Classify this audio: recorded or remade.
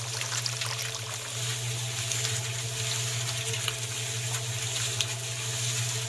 recorded